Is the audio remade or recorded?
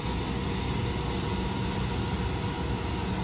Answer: recorded